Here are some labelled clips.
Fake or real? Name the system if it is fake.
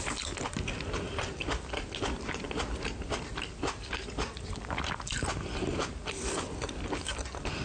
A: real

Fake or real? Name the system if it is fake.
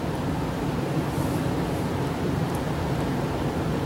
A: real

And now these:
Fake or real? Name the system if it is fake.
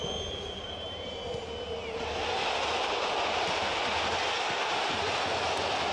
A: real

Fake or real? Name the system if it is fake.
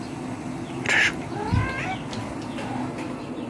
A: real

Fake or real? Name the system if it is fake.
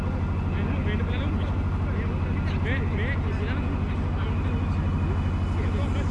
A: real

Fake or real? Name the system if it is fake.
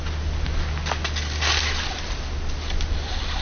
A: real